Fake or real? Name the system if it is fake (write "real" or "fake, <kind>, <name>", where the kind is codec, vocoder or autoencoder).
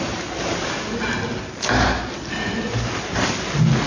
real